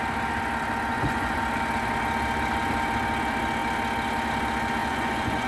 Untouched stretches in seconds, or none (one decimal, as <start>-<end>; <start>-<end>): 0.0-0.9; 1.4-4.8